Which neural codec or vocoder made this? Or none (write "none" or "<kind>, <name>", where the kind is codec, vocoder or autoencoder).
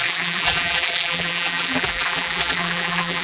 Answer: vocoder, BigVGAN v2